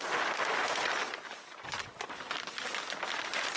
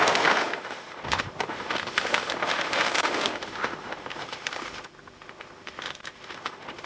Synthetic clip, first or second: second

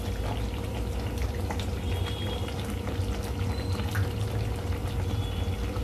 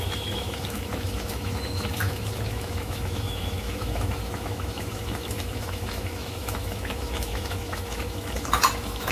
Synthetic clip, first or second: second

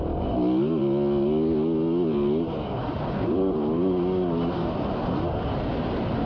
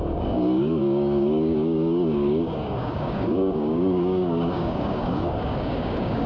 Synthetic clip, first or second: second